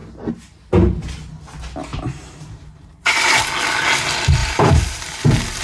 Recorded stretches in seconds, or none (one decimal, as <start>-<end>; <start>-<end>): 0.0-1.9; 3.4-4.4; 5.0-5.6